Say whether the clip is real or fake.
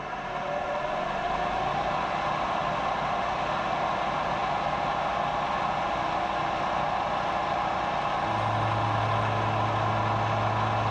real